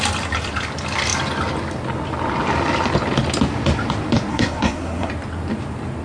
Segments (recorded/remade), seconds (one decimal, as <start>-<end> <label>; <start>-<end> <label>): 0.0-4.3 recorded; 4.3-5.1 remade; 5.1-6.0 recorded